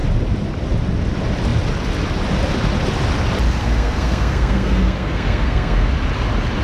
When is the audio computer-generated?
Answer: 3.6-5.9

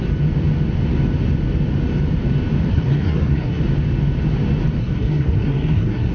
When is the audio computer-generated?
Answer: 2.7-3.6; 4.8-6.1

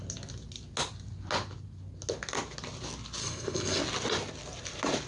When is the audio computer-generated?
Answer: 3.2-3.8

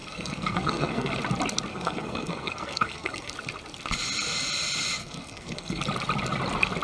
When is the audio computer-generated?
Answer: 0.0-1.1; 1.7-3.3; 5.0-5.8